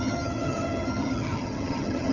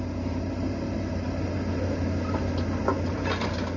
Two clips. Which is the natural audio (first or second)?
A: second